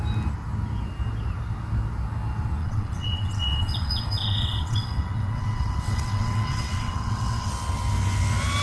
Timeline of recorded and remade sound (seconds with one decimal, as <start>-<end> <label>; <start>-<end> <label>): 0.0-2.6 recorded; 2.6-7.5 remade; 7.5-8.6 recorded